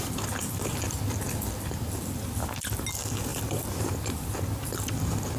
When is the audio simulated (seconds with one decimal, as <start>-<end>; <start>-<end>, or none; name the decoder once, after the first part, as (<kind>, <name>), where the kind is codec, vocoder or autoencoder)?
3.3-4.3 (vocoder, BigVGAN v2)